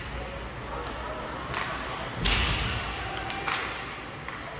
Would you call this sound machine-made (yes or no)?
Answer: no